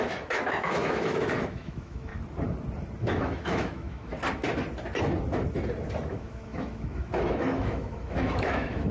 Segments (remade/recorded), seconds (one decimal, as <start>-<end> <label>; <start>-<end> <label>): 0.0-2.1 remade; 2.1-3.0 recorded; 3.0-4.1 remade; 4.1-6.1 recorded; 6.1-8.9 remade